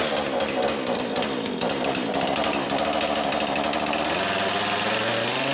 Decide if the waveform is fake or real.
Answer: real